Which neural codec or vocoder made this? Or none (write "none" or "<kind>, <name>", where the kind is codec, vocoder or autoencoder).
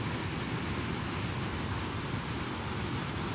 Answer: none